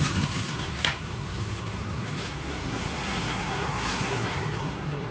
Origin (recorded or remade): remade